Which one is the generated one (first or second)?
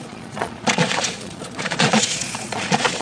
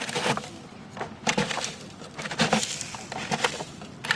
first